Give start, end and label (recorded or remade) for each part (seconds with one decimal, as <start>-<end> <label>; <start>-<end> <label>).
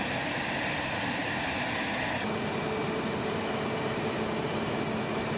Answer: 0.0-5.4 recorded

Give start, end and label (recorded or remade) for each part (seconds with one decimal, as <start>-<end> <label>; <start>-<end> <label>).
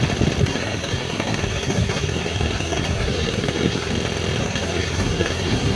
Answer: 0.0-0.4 recorded; 0.4-3.9 remade; 3.9-4.4 recorded; 4.4-5.8 remade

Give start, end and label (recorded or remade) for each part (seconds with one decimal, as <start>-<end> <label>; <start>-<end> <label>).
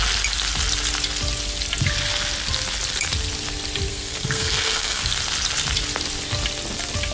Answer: 0.0-3.9 recorded; 3.9-5.0 remade; 5.0-7.1 recorded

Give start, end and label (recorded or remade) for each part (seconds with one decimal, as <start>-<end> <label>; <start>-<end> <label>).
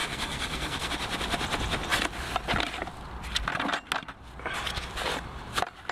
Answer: 0.0-0.9 remade; 0.9-5.9 recorded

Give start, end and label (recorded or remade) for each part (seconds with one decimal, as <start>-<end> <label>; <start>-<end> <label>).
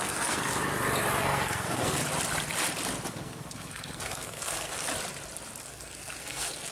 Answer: 0.0-0.5 remade; 0.5-1.2 recorded; 1.2-2.0 remade; 2.0-3.1 recorded; 3.1-4.9 remade; 4.9-5.6 recorded; 5.6-6.7 remade